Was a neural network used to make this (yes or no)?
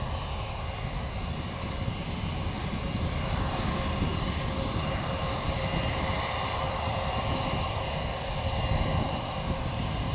no